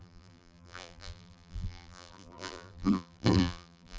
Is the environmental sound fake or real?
fake